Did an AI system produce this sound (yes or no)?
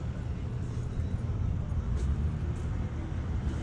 no